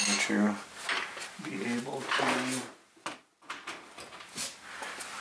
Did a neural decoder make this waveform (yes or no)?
no